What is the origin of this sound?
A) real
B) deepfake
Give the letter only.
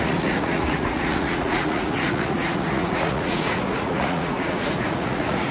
B